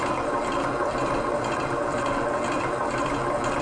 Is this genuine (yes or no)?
yes